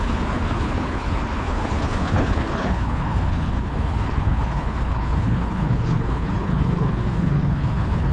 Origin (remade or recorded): remade